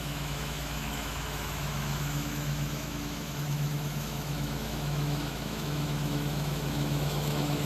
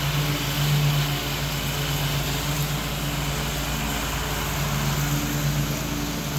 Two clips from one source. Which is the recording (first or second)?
second